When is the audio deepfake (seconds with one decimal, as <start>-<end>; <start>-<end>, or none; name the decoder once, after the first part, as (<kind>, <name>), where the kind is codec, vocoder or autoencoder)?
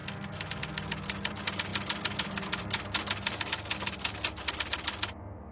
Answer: none